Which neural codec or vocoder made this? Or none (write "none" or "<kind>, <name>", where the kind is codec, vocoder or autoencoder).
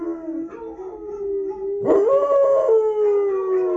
none